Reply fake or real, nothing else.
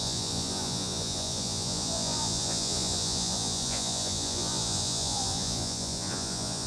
fake